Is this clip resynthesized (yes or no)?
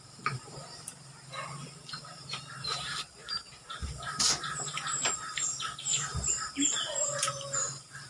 yes